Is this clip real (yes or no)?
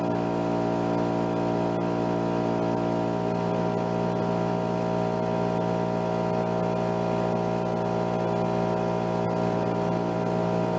yes